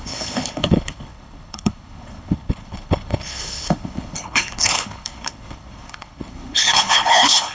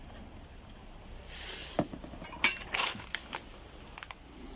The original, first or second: second